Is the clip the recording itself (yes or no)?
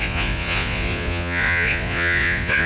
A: no